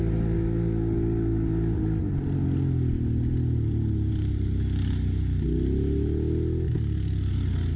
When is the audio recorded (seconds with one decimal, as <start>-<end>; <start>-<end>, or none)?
0.0-7.8